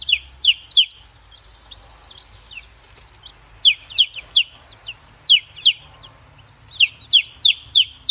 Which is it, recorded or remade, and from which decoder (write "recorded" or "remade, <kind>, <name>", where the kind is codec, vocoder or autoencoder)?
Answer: recorded